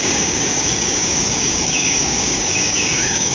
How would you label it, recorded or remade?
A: remade